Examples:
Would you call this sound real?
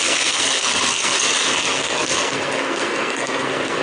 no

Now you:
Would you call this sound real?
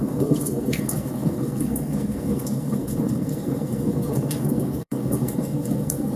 no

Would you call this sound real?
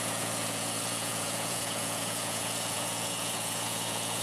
no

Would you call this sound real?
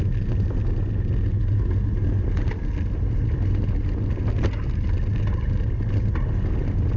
yes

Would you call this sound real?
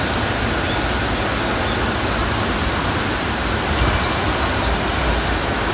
yes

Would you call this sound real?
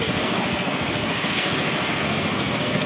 no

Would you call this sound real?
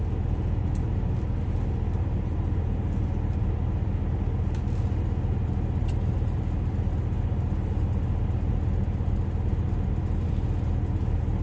yes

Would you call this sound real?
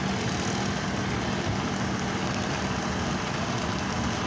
yes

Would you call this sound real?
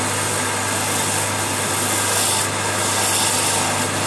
yes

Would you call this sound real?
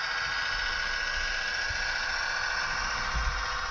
yes